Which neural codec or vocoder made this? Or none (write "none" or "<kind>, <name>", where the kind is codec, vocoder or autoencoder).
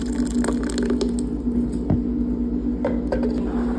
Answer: none